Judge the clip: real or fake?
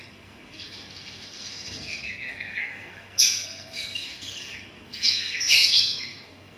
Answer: fake